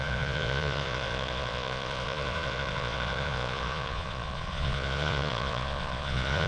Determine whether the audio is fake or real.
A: fake